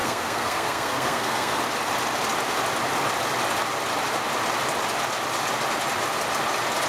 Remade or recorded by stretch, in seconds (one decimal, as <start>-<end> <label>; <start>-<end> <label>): 0.0-1.6 remade; 1.6-6.9 recorded